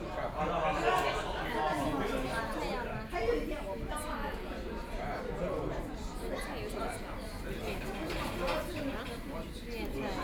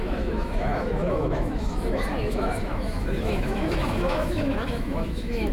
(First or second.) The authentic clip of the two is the first